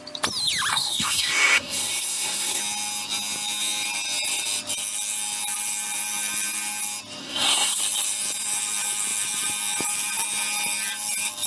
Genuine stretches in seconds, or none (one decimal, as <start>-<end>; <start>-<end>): 0.0-0.7; 2.6-7.2; 7.8-11.5